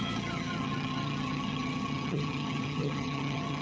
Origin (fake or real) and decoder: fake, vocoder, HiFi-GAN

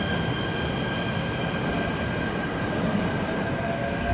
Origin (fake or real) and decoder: real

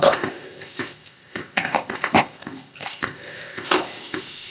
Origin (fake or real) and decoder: fake, codec, ZipCodec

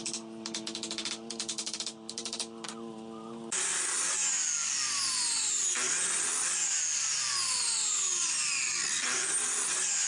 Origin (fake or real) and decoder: real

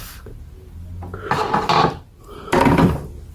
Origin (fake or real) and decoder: real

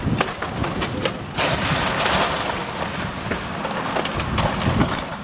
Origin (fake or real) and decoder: real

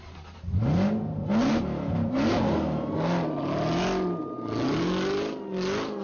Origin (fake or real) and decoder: real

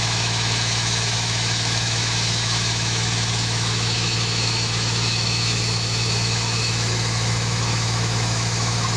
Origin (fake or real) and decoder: fake, autoencoder, DAC-VAE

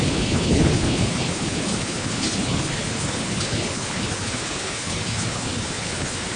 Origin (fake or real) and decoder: fake, codec, HILCodec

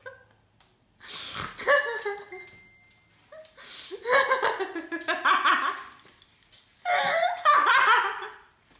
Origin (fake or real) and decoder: real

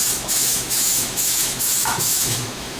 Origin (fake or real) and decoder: fake, autoencoder, DAC-VAE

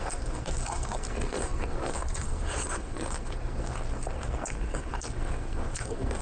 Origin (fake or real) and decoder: fake, codec, SNAC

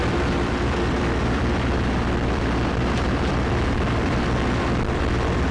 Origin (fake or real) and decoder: fake, vocoder, BigVGAN v2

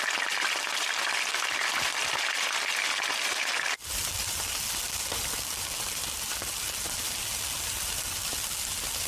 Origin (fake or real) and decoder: real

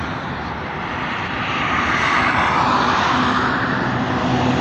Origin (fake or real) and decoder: fake, vocoder, BigVGAN v2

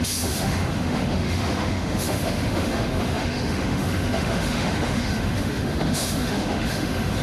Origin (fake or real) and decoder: fake, autoencoder, DAC-VAE